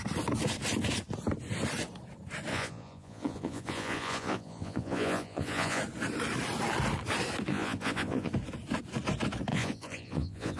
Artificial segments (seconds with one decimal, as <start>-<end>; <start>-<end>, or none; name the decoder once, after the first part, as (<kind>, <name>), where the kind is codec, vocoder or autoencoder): 2.5-5.8 (vocoder, Vocos); 7.5-8.3; 9.5-10.6